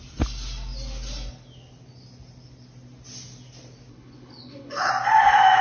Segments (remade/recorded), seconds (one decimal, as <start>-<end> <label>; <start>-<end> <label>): 0.0-3.9 recorded; 3.9-4.9 remade; 4.9-5.6 recorded